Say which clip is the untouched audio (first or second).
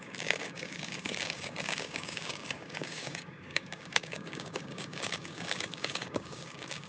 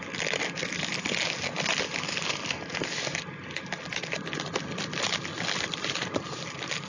second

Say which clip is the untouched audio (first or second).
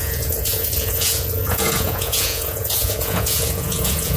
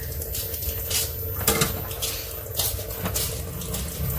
second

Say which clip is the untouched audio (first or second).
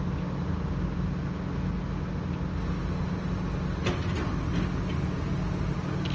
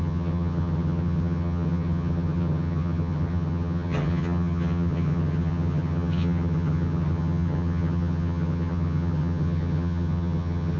first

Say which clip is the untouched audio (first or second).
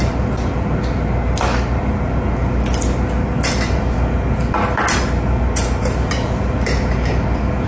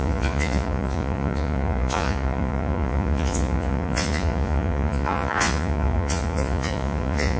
first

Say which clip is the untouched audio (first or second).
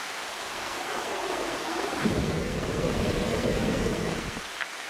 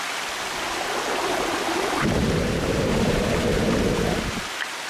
second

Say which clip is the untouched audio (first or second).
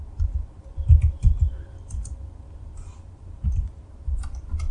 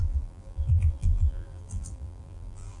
first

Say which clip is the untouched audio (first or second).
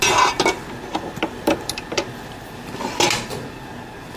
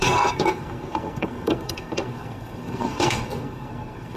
first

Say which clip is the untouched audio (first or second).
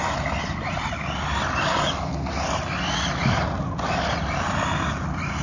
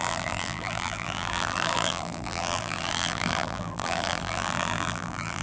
first